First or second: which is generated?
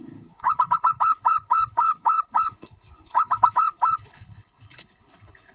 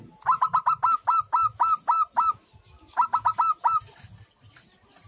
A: first